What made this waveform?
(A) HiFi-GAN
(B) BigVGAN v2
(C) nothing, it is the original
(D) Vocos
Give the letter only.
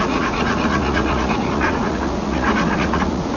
D